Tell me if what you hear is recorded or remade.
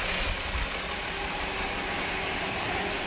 recorded